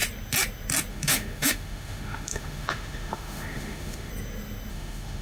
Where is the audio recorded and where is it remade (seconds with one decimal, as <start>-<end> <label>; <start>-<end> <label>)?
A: 0.0-0.9 recorded; 0.9-4.1 remade; 4.1-4.7 recorded; 4.7-5.2 remade